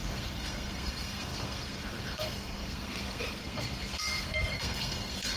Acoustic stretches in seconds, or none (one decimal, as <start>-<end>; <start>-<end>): none